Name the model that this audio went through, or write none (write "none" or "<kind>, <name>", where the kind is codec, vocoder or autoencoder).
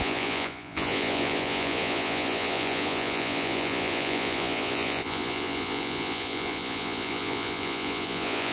vocoder, Vocos